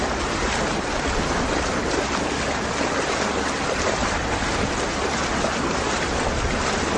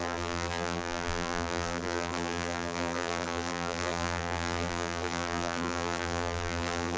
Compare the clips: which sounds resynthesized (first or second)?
second